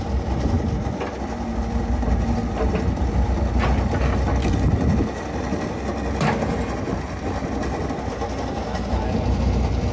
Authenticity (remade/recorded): recorded